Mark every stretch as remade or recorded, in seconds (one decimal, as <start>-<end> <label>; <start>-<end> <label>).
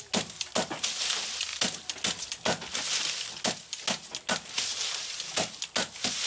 0.0-4.7 recorded; 4.7-5.6 remade; 5.6-6.3 recorded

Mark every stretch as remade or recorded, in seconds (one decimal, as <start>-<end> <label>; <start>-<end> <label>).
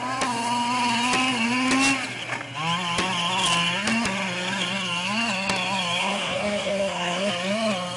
0.0-6.0 recorded; 6.0-7.3 remade; 7.3-8.0 recorded